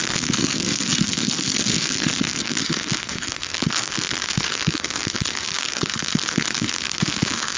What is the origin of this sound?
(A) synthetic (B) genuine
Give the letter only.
A